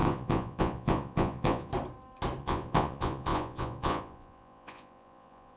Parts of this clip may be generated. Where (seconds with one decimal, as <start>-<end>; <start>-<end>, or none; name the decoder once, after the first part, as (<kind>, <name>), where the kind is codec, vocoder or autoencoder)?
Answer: 0.0-1.7 (vocoder, Vocos); 2.4-5.6